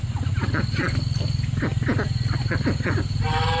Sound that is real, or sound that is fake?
real